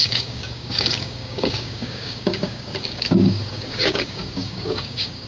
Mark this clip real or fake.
fake